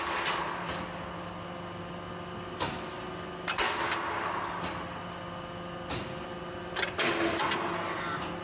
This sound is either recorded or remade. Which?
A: recorded